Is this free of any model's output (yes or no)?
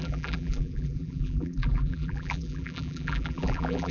no